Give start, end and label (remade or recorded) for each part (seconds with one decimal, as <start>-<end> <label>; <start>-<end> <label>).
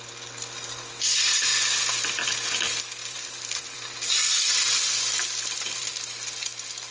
0.0-3.0 recorded; 3.0-5.9 remade; 5.9-6.9 recorded